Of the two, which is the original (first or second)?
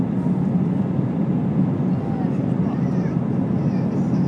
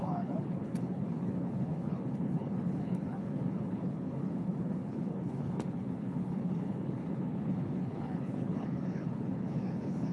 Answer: first